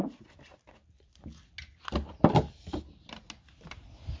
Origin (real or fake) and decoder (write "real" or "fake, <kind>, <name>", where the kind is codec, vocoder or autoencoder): real